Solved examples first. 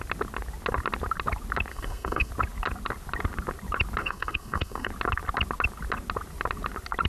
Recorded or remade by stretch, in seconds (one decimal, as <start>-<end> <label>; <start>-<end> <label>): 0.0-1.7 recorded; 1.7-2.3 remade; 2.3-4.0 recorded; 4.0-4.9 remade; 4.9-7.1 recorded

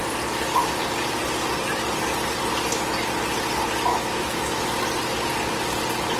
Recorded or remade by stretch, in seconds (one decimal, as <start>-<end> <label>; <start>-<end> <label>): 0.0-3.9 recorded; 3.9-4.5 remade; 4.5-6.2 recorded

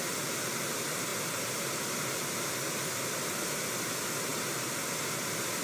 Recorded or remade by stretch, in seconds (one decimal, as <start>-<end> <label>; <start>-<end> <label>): 0.0-5.6 recorded